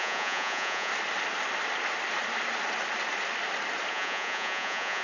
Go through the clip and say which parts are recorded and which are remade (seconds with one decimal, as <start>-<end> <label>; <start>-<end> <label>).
0.0-0.9 remade; 0.9-3.9 recorded; 3.9-5.0 remade